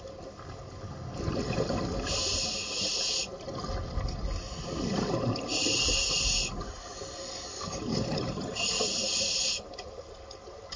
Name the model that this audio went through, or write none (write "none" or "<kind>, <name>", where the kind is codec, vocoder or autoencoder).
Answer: none